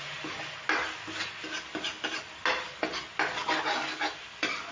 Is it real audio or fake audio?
real